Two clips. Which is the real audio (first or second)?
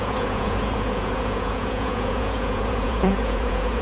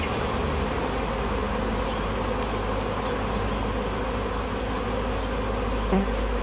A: second